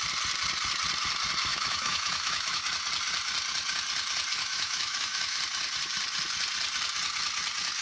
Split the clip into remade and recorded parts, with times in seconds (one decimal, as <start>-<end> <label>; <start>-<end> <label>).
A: 0.0-1.5 recorded; 1.5-2.6 remade; 2.6-4.3 recorded; 4.3-5.4 remade; 5.4-7.8 recorded

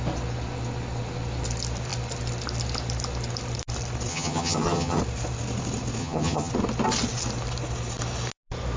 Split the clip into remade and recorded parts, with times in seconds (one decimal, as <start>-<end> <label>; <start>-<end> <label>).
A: 0.0-4.1 recorded; 4.1-5.0 remade; 5.0-6.0 recorded; 6.0-6.5 remade; 6.5-8.8 recorded

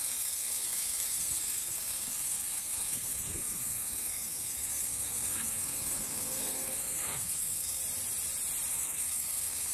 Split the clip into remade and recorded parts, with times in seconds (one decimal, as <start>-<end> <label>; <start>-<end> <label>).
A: 0.0-7.8 remade; 7.8-8.7 recorded; 8.7-9.7 remade

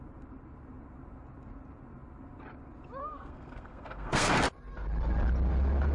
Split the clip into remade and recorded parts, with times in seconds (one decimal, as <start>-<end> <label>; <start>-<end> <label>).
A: 0.0-3.0 recorded; 3.0-4.3 remade; 4.3-5.9 recorded